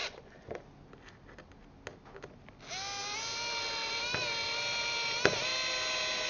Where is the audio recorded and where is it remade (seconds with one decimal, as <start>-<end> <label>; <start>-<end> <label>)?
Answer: 0.0-0.6 remade; 0.6-6.3 recorded